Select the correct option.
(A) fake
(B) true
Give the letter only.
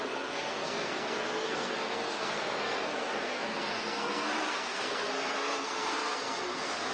A